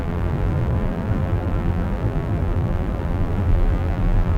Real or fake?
fake